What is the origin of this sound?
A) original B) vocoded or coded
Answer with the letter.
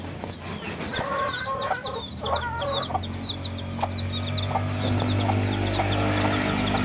A